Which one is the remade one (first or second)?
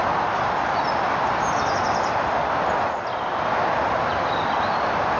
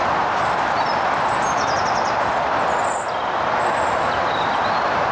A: first